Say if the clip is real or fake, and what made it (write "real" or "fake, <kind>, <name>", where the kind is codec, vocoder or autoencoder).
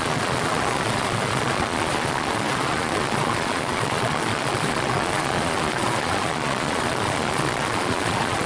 fake, vocoder, Vocos